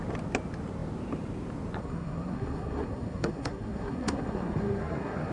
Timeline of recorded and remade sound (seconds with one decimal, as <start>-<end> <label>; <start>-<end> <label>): 0.0-1.8 recorded; 1.8-5.3 remade